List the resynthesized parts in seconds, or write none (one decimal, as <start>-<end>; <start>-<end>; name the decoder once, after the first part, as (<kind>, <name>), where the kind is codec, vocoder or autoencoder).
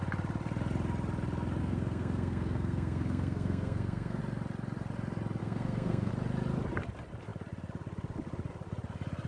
1.6-4.2 (codec, SNAC); 5.4-6.1